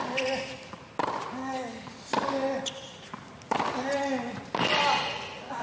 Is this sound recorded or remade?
recorded